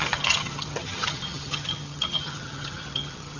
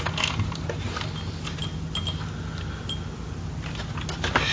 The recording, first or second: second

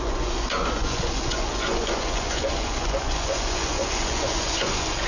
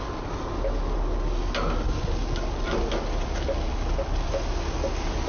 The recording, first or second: second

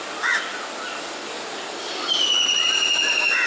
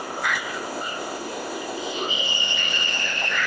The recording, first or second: first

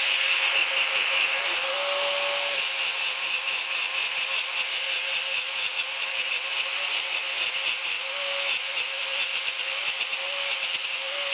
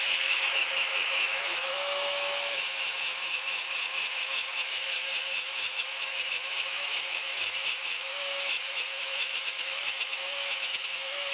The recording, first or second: first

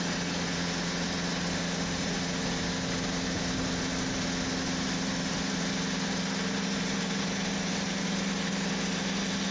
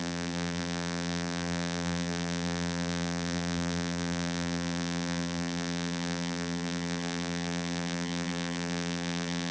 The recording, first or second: first